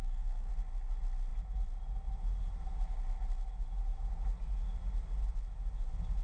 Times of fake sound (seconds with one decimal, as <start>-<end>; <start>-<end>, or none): 0.0-0.5